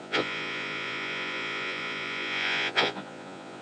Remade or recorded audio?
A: remade